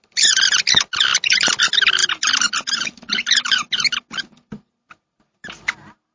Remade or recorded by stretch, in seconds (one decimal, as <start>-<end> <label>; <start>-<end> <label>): 0.0-6.1 recorded